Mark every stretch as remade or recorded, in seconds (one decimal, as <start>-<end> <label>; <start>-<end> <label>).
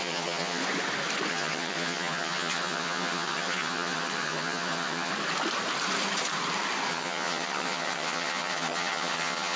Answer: 0.0-0.6 remade; 0.6-1.3 recorded; 1.3-5.1 remade; 5.1-6.9 recorded; 6.9-9.6 remade